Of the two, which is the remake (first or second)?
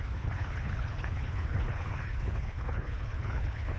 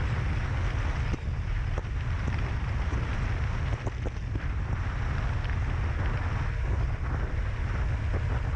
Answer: first